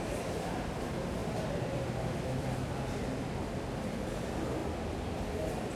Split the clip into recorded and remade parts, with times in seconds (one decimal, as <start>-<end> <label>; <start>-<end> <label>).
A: 0.0-5.8 recorded